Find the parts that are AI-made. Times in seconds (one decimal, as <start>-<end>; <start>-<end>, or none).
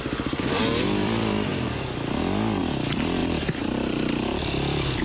0.0-1.5; 2.6-5.0